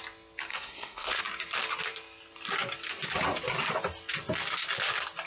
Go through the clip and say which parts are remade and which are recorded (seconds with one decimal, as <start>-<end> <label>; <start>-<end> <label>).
0.0-0.5 recorded; 0.5-1.2 remade; 1.2-5.3 recorded